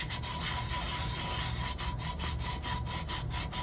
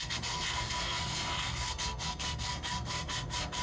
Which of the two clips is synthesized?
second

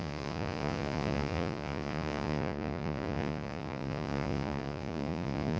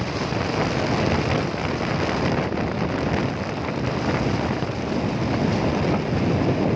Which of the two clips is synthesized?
first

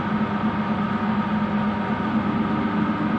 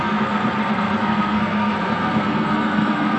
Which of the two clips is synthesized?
second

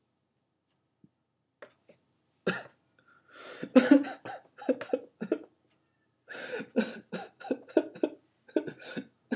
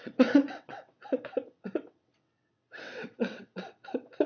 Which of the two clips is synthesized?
second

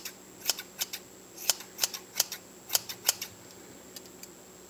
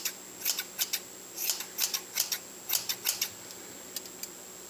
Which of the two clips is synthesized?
first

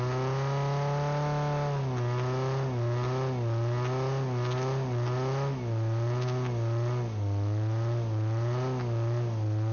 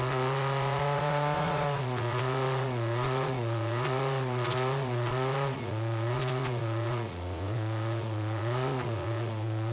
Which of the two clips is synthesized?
second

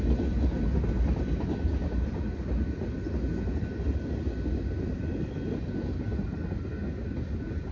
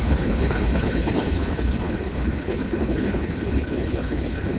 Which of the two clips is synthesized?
second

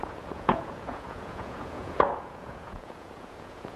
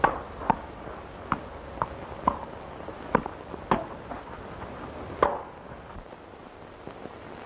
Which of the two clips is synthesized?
first